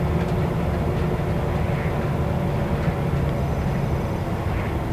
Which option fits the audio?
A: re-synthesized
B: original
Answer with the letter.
B